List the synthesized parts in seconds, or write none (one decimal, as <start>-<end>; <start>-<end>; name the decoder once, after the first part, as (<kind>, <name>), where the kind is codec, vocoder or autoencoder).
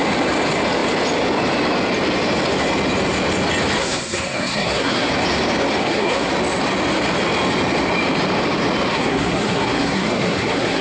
3.8-5.1 (codec, SNAC); 5.8-6.3; 8.9-10.8